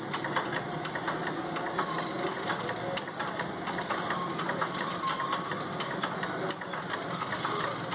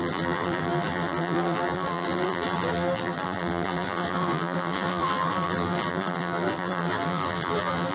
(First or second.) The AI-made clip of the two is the second